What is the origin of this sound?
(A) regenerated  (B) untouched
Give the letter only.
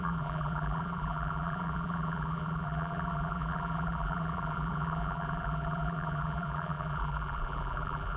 A